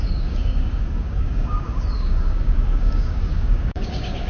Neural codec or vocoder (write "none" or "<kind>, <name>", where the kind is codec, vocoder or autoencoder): codec, DAC